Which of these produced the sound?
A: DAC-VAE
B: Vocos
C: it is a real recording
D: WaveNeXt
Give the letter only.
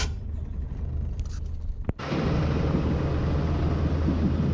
C